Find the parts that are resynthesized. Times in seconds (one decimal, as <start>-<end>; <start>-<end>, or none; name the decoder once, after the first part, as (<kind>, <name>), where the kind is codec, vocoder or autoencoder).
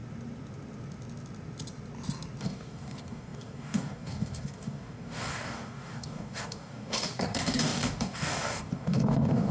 2.4-9.5 (codec, DAC)